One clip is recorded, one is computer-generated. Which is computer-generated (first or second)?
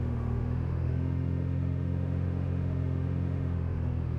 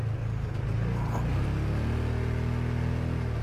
first